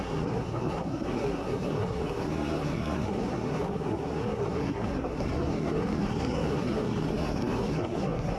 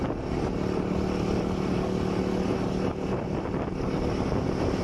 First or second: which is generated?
first